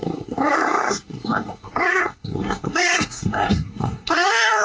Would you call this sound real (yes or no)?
no